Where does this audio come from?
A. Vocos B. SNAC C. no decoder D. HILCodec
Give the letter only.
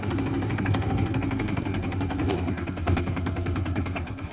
B